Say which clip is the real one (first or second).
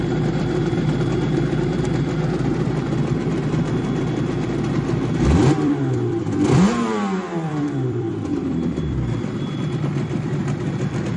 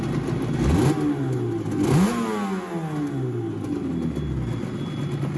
second